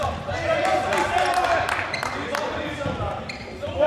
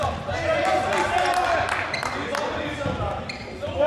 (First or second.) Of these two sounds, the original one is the second